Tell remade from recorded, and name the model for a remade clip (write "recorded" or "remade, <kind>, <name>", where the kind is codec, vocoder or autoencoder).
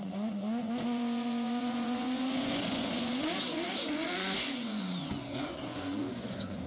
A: remade, vocoder, Vocos